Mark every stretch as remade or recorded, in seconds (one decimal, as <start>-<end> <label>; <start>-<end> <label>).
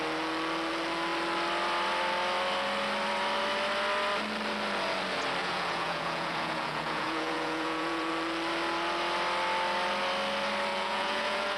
0.0-5.4 recorded; 5.4-8.1 remade; 8.1-10.7 recorded; 10.7-11.6 remade